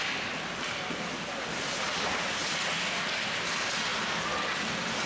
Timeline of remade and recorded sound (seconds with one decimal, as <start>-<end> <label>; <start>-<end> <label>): 0.0-5.1 recorded